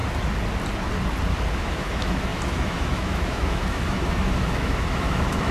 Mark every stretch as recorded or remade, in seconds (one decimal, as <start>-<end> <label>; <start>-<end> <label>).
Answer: 0.0-1.5 recorded; 1.5-5.5 remade